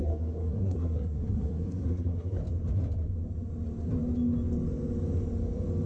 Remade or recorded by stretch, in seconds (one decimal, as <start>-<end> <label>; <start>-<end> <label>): 0.0-2.4 remade; 2.4-5.9 recorded